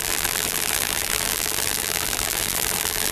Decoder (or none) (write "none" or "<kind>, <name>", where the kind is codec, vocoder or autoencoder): vocoder, BigVGAN v2